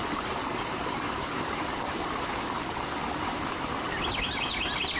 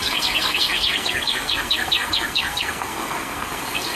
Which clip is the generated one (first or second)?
second